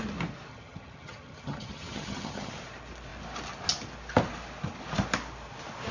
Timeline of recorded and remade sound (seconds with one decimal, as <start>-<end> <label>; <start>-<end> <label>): 0.0-0.5 recorded; 0.5-2.5 remade; 2.5-5.9 recorded